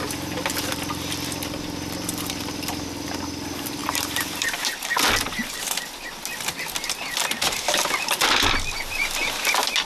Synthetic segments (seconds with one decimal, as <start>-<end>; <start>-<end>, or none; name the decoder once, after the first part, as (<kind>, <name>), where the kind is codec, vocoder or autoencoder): 3.8-4.9 (vocoder, BigVGAN v2)